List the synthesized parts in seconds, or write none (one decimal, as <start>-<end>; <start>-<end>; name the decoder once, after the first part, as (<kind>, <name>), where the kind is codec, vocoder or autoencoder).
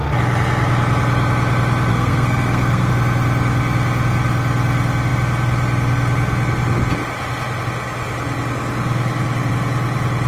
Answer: 1.9-2.9 (codec, SNAC)